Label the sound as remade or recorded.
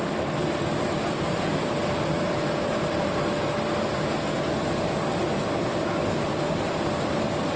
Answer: recorded